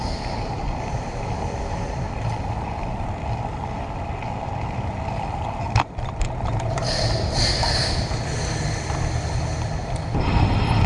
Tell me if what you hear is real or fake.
real